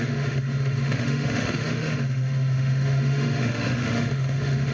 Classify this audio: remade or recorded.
remade